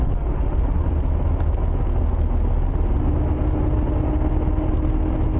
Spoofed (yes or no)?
no